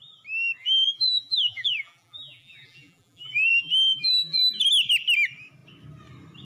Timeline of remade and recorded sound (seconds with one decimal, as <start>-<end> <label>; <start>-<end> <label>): 0.0-0.6 recorded; 0.6-4.4 remade; 4.4-6.4 recorded